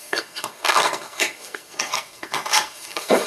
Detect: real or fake fake